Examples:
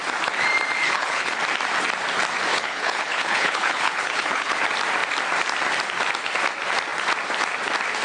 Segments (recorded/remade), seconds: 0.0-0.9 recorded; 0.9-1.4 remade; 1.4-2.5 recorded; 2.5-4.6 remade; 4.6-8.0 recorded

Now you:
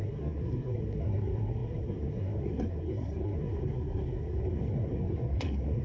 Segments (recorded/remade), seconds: 0.0-5.8 remade